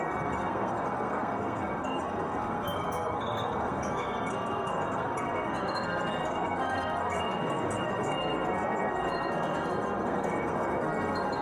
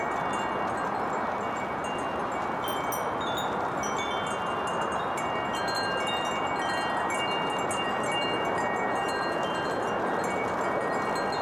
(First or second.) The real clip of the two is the second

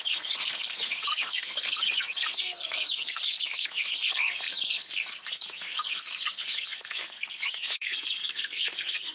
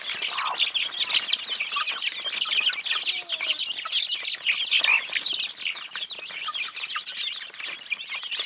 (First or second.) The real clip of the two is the second